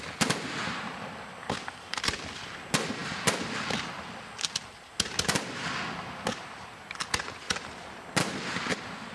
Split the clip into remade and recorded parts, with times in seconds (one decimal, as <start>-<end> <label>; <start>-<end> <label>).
0.0-9.1 recorded